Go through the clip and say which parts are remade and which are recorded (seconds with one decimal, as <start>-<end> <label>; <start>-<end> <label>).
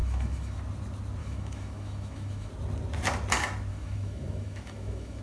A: 0.0-0.6 remade; 0.6-1.2 recorded; 1.2-2.5 remade; 2.5-3.7 recorded; 3.7-5.2 remade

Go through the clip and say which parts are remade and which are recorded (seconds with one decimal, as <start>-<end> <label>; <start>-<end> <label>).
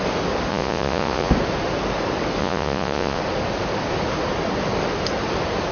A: 0.0-0.5 recorded; 0.5-1.3 remade; 1.3-2.4 recorded; 2.4-3.2 remade; 3.2-5.7 recorded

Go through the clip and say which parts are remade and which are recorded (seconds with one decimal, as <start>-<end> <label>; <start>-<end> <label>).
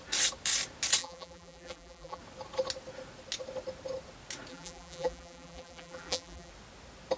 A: 0.0-1.0 recorded; 1.0-2.2 remade; 2.2-4.5 recorded; 4.5-6.5 remade; 6.5-7.2 recorded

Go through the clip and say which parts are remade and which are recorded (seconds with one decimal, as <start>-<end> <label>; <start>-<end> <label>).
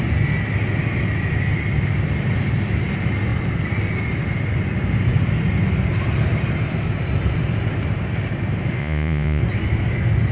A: 0.0-8.8 recorded; 8.8-9.4 remade; 9.4-10.3 recorded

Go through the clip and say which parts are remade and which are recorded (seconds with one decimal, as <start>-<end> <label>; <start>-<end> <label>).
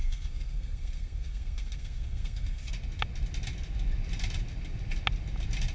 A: 0.0-2.7 remade; 2.7-5.7 recorded